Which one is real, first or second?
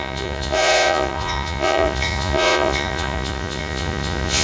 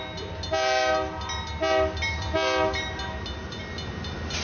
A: second